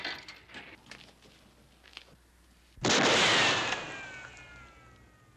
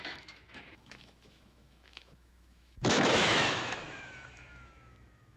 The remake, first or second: second